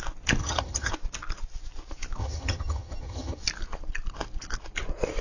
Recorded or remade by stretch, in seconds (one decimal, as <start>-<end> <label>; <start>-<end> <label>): 0.0-0.4 recorded; 0.4-0.9 remade; 0.9-2.2 recorded; 2.2-3.4 remade; 3.4-5.2 recorded